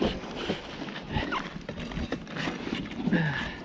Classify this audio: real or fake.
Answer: real